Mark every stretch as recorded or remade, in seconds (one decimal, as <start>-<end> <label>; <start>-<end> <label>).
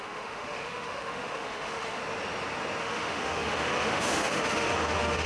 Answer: 0.0-2.0 remade; 2.0-2.8 recorded; 2.8-5.3 remade